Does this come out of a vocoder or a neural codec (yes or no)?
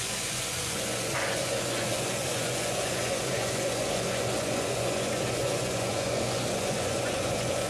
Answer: yes